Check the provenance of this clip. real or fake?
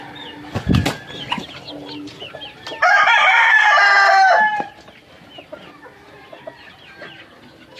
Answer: real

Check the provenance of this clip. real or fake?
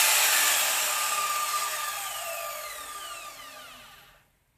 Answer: real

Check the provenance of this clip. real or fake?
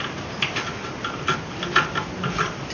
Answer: real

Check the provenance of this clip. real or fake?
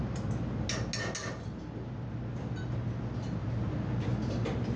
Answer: real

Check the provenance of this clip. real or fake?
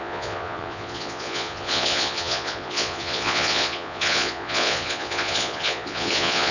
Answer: fake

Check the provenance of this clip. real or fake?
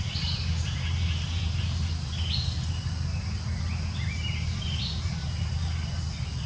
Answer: real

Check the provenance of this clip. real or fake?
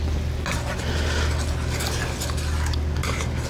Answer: real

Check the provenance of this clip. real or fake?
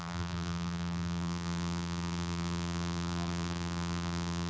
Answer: fake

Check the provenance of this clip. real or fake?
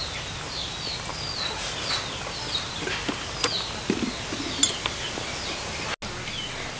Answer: real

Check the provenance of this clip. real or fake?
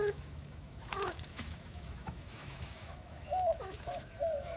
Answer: fake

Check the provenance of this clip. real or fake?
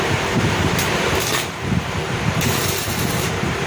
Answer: fake